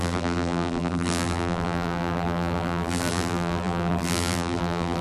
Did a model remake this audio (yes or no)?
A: yes